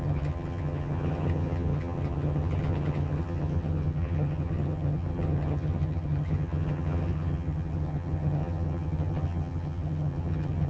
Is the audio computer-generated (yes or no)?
yes